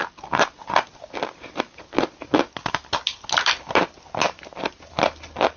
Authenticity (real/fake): real